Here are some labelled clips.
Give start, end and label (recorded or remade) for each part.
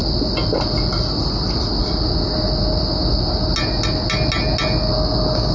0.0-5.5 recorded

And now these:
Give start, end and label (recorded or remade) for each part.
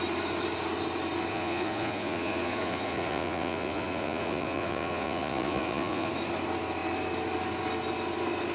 0.0-1.3 recorded; 1.3-6.1 remade; 6.1-8.5 recorded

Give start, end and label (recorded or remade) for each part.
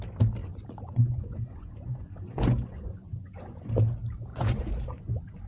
0.0-0.4 recorded; 0.4-3.7 remade; 3.7-4.3 recorded; 4.3-5.5 remade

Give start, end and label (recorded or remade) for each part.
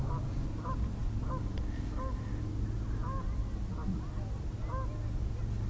0.0-5.7 recorded